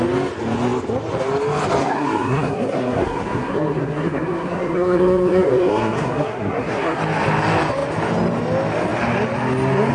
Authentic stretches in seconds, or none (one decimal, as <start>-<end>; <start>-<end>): 0.0-1.8; 7.0-9.9